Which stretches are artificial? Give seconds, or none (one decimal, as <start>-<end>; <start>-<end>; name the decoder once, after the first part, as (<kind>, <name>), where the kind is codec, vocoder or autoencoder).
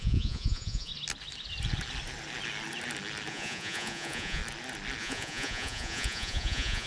0.0-0.9 (vocoder, Vocos); 3.3-4.4; 5.0-6.9